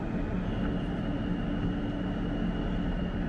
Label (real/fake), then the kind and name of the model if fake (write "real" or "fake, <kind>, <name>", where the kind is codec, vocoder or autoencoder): real